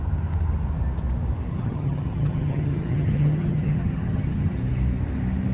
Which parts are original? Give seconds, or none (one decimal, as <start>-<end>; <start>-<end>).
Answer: 0.0-1.5; 4.6-5.5